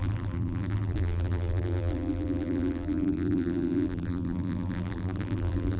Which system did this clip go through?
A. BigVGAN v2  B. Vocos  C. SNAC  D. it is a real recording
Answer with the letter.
A